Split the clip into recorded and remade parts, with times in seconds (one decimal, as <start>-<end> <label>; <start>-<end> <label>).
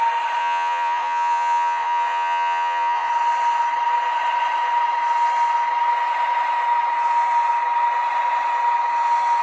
0.0-0.4 recorded; 0.4-3.1 remade; 3.1-9.4 recorded